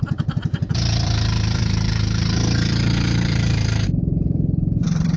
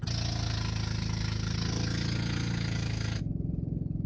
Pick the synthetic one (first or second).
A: first